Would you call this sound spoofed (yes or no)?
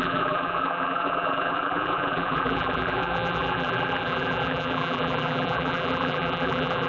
yes